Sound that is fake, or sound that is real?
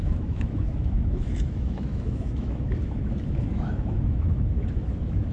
fake